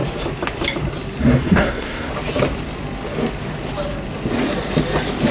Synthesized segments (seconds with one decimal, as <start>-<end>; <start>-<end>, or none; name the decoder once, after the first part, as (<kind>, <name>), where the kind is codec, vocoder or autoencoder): 1.2-2.1 (codec, SNAC)